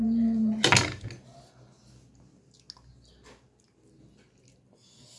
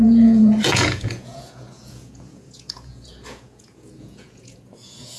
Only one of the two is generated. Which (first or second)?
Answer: second